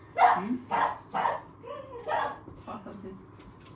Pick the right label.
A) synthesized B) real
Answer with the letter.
B